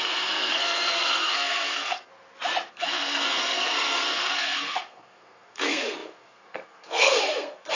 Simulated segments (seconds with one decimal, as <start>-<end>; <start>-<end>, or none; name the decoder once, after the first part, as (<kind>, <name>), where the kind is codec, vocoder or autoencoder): 0.0-2.1 (codec, SNAC); 2.7-7.8